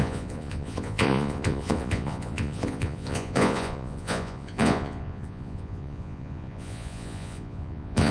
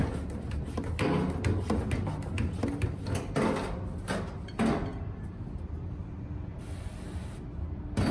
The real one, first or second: second